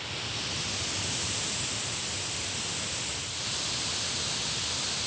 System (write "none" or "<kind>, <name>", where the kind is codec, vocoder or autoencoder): none